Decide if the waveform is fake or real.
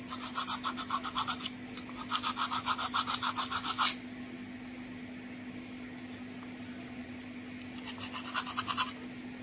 real